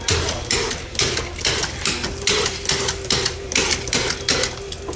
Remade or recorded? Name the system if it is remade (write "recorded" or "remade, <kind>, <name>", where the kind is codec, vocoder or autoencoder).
recorded